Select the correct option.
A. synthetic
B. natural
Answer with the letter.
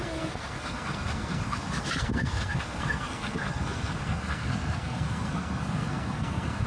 A